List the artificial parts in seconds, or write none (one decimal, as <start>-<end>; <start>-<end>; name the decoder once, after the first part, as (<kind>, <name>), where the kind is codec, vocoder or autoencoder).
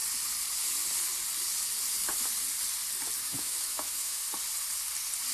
3.2-4.2 (autoencoder, DAC-VAE)